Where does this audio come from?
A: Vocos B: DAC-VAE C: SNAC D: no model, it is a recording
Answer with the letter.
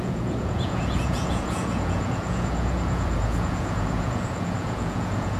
A